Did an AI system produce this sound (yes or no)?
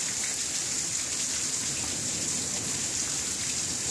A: no